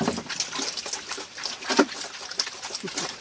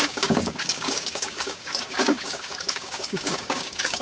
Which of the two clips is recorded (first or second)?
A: first